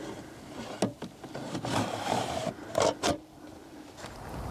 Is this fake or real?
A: real